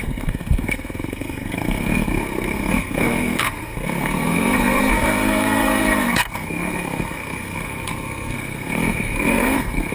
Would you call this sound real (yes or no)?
no